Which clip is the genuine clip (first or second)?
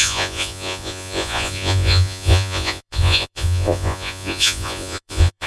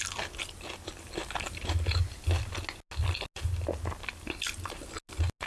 second